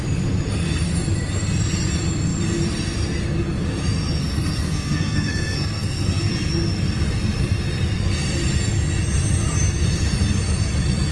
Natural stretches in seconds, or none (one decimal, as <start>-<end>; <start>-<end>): 0.0-4.2; 6.3-11.1